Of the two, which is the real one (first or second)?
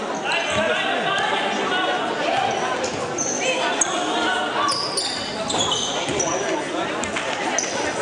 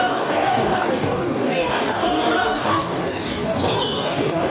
first